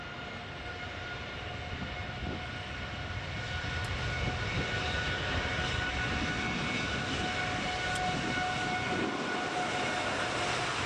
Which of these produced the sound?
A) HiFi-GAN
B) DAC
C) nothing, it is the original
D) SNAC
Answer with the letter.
C